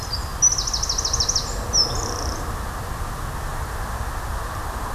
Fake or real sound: real